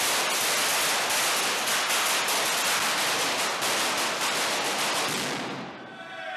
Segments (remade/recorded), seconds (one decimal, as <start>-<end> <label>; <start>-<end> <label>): 0.0-6.4 recorded